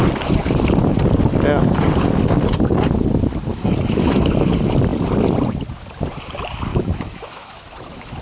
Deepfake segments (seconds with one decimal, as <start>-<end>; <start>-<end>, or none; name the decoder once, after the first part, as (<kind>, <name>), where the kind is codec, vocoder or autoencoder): 3.5-4.3 (autoencoder, DAC-VAE); 6.7-8.2